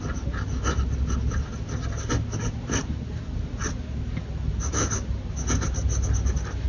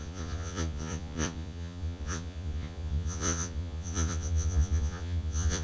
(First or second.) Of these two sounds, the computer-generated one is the second